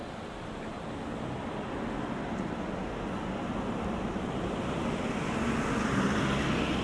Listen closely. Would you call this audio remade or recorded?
recorded